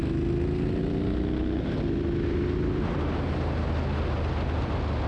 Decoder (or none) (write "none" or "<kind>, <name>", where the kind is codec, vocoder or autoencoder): none